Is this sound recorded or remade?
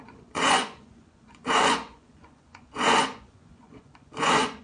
remade